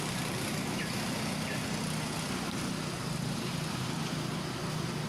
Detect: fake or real real